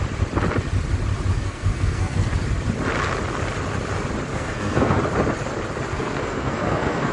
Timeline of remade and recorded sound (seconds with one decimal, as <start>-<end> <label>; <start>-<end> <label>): 0.0-1.3 recorded; 1.3-2.3 remade; 2.3-4.3 recorded; 4.3-5.0 remade; 5.0-5.9 recorded; 5.9-7.1 remade